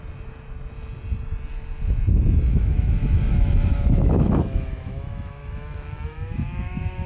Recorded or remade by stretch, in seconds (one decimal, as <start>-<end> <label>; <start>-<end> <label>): 0.0-2.5 recorded; 2.5-7.1 remade

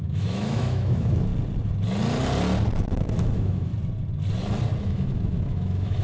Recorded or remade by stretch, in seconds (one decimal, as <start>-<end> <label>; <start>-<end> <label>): 0.0-1.3 remade; 1.3-2.8 recorded; 2.8-3.7 remade; 3.7-4.8 recorded; 4.8-6.0 remade

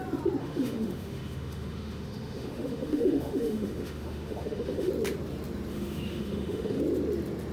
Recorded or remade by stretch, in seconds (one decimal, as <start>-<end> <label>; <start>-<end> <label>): 0.0-0.4 recorded; 0.4-4.9 remade; 4.9-5.7 recorded; 5.7-6.8 remade; 6.8-7.5 recorded